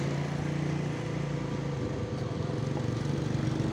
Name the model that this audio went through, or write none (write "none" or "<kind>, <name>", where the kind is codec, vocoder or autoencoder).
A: none